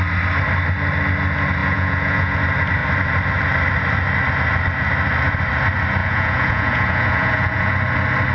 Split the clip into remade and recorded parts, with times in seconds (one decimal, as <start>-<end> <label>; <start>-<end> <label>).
0.0-1.6 recorded; 1.6-2.4 remade; 2.4-6.0 recorded; 6.0-7.7 remade; 7.7-8.3 recorded